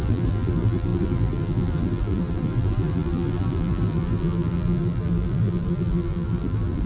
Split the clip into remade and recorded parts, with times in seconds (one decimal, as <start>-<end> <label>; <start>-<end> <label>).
0.0-6.9 remade